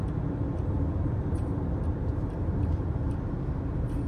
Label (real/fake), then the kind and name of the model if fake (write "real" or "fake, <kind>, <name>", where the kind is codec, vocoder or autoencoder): fake, vocoder, BigVGAN v2